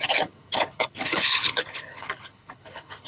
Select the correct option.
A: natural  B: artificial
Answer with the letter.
B